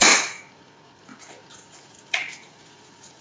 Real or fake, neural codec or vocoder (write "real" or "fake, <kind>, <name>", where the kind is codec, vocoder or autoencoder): fake, vocoder, Vocos